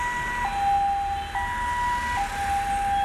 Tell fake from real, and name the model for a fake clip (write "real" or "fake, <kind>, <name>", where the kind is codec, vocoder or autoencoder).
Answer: real